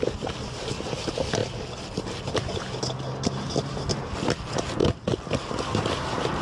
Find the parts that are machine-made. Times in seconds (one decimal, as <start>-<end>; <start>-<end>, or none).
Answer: none